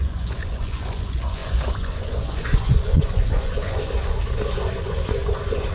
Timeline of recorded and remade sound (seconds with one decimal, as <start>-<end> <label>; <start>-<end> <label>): 0.0-5.7 remade